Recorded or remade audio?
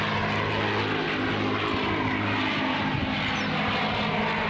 recorded